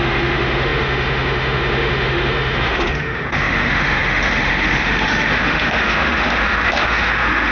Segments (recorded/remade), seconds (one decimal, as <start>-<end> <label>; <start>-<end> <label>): 0.0-7.5 remade